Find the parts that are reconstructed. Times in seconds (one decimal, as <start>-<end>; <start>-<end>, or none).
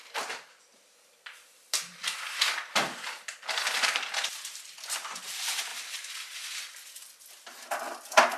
1.9-5.2